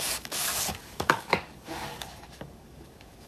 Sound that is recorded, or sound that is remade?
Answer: remade